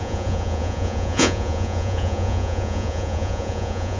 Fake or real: fake